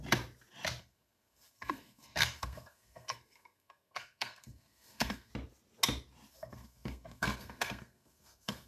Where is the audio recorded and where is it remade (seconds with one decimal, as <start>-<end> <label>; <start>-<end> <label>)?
0.0-0.8 recorded; 0.8-5.3 remade; 5.3-6.3 recorded; 6.3-8.7 remade